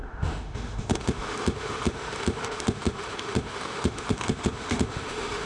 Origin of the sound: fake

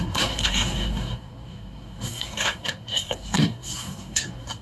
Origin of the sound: fake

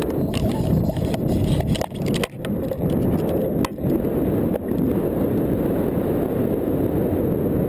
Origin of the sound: real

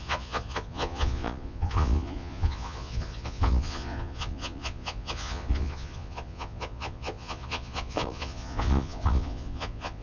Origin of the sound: fake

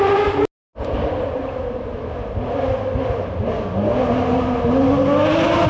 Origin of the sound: real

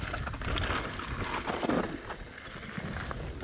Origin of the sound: real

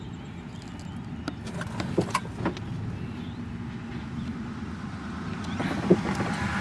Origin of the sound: real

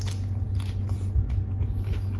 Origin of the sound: real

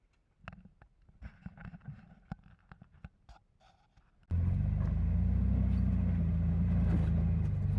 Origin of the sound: real